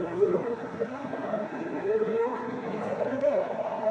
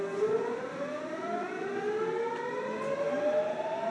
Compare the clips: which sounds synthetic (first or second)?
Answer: first